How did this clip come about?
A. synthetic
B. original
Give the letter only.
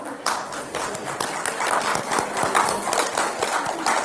B